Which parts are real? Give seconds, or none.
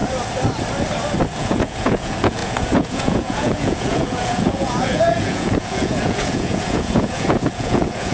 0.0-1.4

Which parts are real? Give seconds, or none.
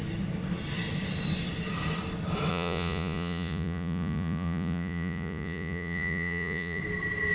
0.0-2.5; 6.8-7.3